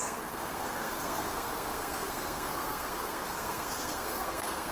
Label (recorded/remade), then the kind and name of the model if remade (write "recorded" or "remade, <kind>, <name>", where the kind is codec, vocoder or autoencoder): remade, codec, SNAC